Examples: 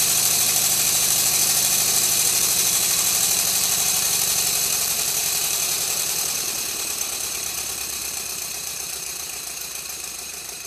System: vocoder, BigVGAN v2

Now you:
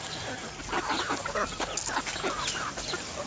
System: none